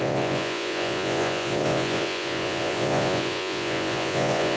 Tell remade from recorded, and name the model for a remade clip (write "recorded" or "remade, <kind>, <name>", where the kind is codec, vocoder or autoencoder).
remade, vocoder, Vocos